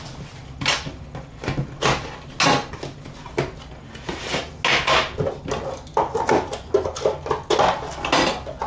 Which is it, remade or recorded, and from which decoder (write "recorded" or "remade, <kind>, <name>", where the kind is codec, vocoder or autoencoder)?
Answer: recorded